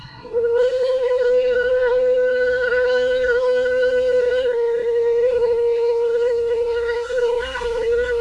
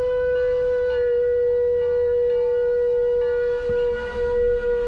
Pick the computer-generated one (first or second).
first